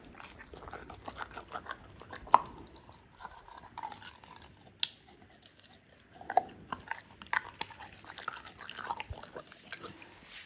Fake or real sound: real